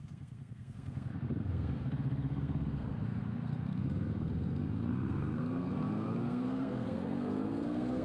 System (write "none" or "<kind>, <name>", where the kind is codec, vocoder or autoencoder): codec, SNAC